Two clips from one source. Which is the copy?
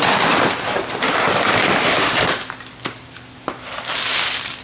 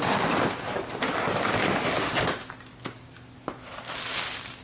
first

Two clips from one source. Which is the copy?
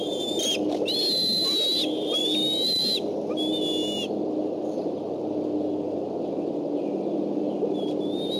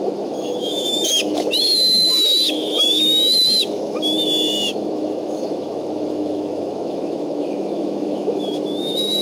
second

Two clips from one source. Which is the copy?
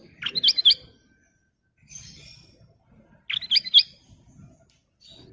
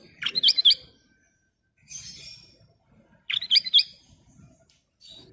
second